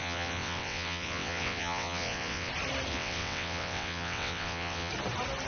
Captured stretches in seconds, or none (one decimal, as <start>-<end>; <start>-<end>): 2.5-2.9; 4.9-5.5

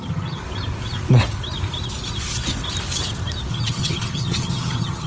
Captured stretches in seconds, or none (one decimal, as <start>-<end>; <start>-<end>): 0.4-3.5

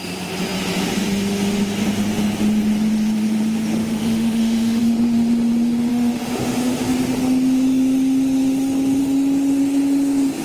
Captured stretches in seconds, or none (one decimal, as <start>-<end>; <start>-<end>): 0.0-3.8; 4.8-5.9; 6.9-10.4

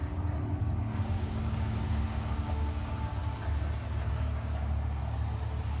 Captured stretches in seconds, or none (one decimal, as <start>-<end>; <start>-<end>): 0.0-0.6; 3.2-4.1; 5.0-5.8

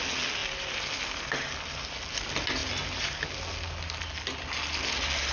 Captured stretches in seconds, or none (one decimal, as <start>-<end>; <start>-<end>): 0.0-0.4; 1.8-5.3

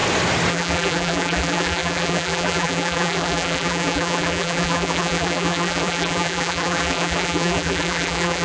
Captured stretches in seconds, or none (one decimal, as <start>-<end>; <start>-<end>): 0.0-0.5

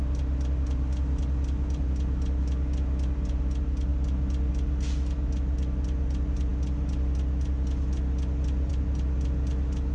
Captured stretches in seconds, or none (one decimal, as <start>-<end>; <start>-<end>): 0.0-9.9

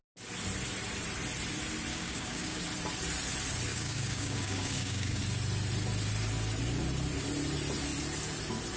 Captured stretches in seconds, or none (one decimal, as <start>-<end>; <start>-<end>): 0.0-1.9; 2.6-3.7; 5.2-8.8